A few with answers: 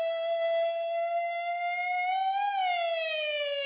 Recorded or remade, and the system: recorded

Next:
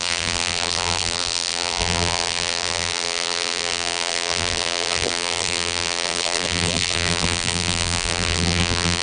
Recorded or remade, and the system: remade, vocoder, BigVGAN v2